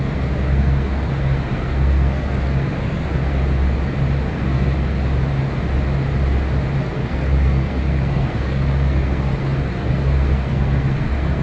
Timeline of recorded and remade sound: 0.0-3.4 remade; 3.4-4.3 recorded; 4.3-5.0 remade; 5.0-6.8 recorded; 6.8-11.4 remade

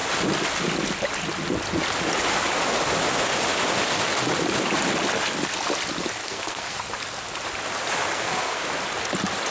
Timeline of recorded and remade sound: 0.0-6.2 recorded; 6.2-6.9 remade; 6.9-8.1 recorded; 8.1-8.6 remade; 8.6-9.5 recorded

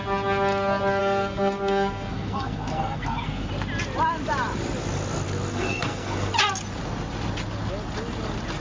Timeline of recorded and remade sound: 0.0-1.0 recorded; 1.0-3.5 remade; 3.5-5.5 recorded; 5.5-6.3 remade; 6.3-8.6 recorded

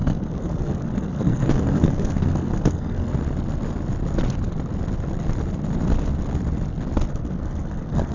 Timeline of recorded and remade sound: 0.0-3.1 remade; 3.1-7.1 recorded; 7.1-8.1 remade